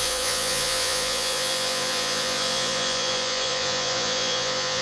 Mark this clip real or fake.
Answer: fake